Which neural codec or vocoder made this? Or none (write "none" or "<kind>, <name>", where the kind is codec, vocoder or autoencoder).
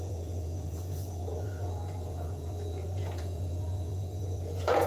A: vocoder, Vocos